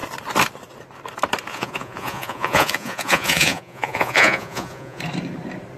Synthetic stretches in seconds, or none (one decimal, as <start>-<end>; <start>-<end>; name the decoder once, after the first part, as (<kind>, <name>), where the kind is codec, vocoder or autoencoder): 1.5-5.0 (vocoder, Vocos)